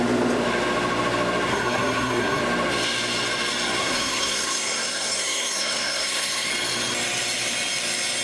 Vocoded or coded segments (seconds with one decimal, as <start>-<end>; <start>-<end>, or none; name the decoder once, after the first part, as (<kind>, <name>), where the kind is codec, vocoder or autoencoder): 1.5-2.4 (codec, SNAC); 3.8-6.5